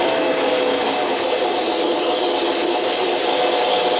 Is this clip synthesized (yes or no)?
no